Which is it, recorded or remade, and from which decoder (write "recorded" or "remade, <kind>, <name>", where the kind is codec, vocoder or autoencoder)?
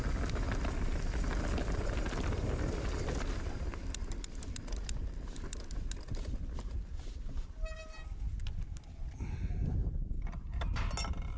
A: recorded